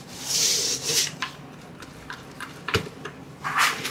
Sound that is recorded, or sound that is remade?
remade